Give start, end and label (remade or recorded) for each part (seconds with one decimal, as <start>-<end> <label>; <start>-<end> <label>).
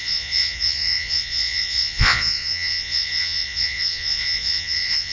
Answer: 0.0-5.1 remade